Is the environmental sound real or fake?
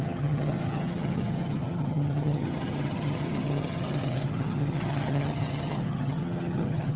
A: fake